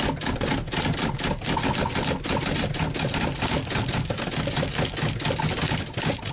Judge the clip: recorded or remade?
recorded